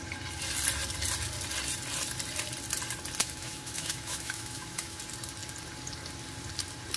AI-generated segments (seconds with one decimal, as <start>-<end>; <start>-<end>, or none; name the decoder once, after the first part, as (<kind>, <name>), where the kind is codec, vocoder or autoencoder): 3.2-5.0 (autoencoder, DAC-VAE)